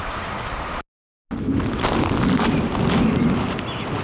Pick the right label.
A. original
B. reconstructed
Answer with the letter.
A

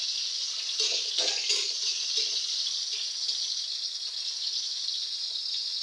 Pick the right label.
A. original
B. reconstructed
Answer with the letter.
A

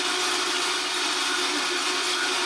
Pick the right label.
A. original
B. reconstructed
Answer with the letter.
A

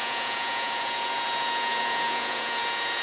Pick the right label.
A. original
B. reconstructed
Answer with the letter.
B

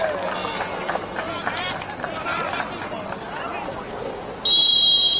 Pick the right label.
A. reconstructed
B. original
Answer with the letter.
B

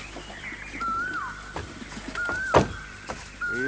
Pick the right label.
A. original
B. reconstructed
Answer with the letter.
A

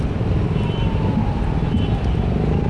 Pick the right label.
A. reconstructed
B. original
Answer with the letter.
B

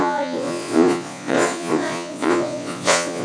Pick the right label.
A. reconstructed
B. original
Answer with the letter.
A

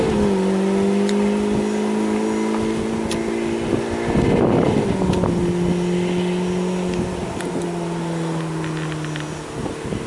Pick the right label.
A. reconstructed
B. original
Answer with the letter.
B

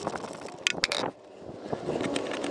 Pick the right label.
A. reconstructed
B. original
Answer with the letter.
B